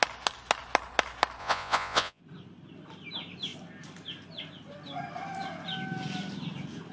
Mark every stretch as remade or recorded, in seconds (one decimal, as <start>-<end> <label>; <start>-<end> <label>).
0.0-1.4 recorded; 1.4-2.2 remade; 2.2-6.9 recorded